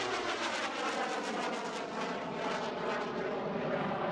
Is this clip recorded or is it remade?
recorded